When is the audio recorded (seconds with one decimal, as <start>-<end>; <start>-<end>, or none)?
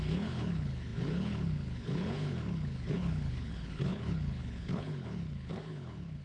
none